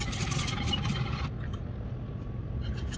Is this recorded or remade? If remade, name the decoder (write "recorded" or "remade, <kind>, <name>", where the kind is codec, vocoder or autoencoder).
recorded